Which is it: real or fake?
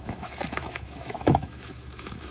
fake